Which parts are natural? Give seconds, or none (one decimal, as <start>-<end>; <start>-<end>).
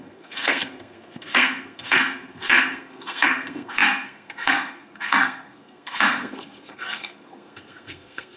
none